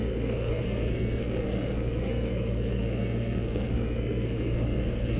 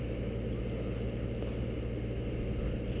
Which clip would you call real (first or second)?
second